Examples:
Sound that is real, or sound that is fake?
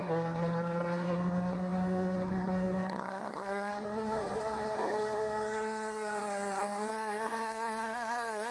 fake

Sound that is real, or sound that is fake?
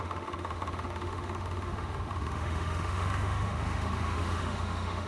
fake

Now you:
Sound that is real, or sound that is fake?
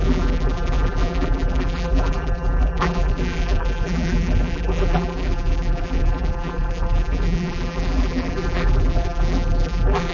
fake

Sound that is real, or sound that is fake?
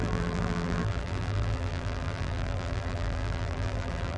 fake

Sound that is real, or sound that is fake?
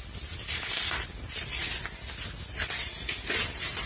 real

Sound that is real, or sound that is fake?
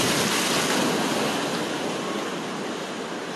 real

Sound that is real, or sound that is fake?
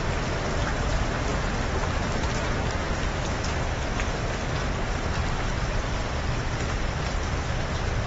real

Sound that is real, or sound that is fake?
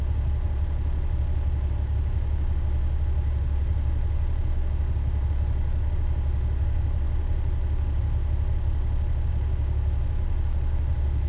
real